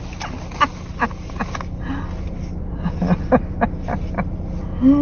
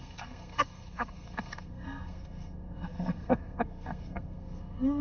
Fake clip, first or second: second